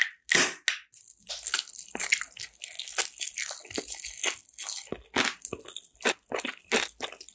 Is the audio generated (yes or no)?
no